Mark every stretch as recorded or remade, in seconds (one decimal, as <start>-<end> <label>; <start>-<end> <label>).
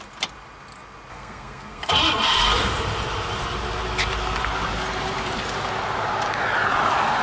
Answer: 0.0-1.1 recorded; 1.1-1.9 remade; 1.9-7.2 recorded